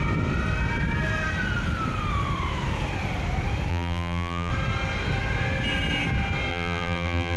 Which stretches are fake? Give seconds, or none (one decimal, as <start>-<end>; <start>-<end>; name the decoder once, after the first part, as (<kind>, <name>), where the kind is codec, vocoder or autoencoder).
3.7-4.5 (vocoder, BigVGAN v2); 6.5-7.4